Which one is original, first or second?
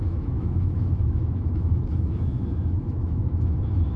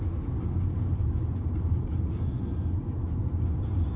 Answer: second